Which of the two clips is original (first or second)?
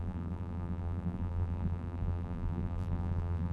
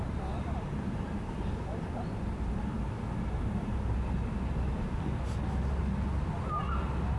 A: second